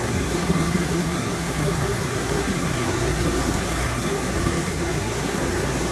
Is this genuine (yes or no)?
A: no